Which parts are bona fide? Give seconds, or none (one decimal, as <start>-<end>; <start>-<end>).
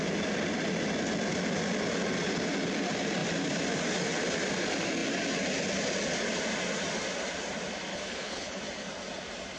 0.0-7.9; 8.6-9.6